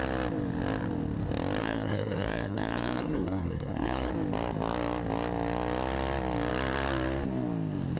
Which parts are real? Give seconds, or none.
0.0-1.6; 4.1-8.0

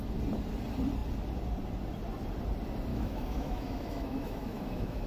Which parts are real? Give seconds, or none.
0.0-2.9

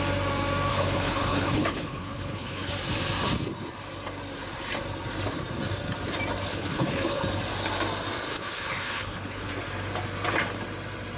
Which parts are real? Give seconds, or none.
0.0-0.7; 2.7-6.5; 7.2-8.3; 9.5-11.2

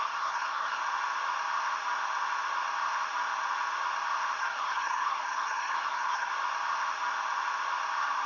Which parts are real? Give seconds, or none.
0.8-4.4; 6.3-8.3

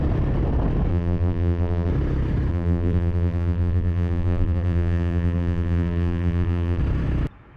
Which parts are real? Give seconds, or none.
0.0-0.9; 1.9-2.5; 6.8-7.6